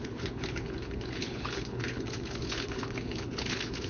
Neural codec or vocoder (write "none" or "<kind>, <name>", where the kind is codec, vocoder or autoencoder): codec, HILCodec